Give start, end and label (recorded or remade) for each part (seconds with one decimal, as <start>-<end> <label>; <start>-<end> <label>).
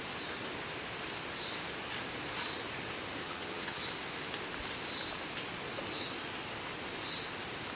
0.0-3.2 recorded; 3.2-3.8 remade; 3.8-7.8 recorded